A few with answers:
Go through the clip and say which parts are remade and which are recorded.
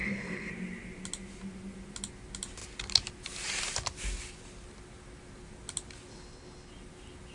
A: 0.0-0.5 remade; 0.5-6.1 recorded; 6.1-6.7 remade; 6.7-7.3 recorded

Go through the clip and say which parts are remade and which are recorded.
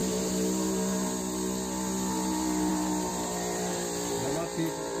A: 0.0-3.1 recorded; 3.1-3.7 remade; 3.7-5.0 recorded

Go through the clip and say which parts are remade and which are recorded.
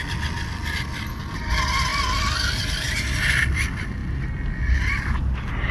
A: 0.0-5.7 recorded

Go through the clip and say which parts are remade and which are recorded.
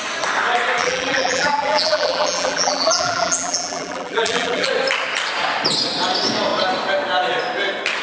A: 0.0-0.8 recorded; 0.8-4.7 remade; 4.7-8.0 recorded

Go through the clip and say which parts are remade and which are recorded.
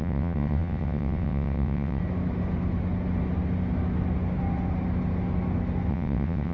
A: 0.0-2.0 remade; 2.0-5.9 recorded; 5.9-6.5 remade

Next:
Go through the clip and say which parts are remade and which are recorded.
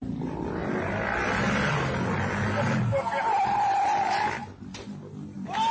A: 0.0-5.7 recorded